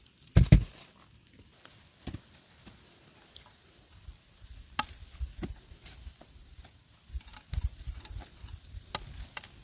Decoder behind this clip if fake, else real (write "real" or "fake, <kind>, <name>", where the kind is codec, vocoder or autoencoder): real